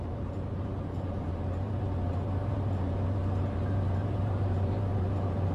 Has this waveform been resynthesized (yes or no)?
yes